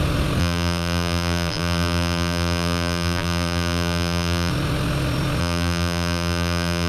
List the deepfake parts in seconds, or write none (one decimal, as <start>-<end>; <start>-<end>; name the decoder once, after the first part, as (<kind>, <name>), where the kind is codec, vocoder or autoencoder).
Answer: 0.4-4.5 (vocoder, BigVGAN v2); 5.4-6.9